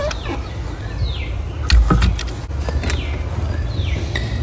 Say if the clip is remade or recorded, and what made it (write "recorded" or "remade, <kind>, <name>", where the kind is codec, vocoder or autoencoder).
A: recorded